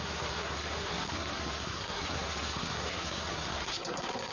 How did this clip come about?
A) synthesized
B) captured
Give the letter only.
A